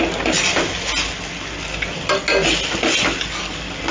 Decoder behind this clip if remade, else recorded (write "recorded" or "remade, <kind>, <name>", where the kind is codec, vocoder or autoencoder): recorded